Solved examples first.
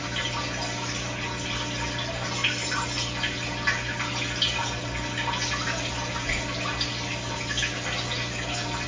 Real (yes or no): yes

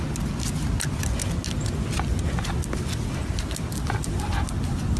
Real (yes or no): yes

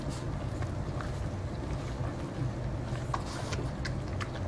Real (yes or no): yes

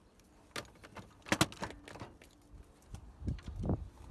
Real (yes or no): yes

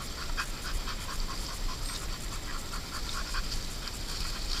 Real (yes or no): no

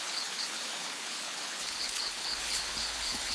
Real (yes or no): no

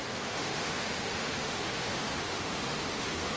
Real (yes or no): no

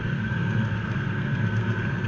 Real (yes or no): no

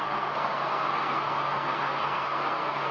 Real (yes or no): no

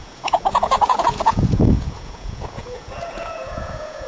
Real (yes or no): no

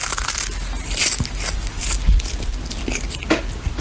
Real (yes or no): yes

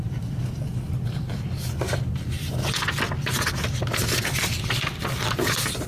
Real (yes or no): yes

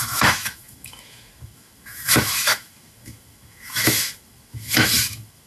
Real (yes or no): no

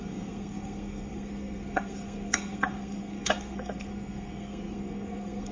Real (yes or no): no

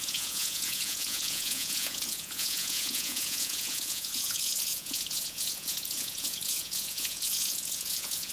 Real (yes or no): no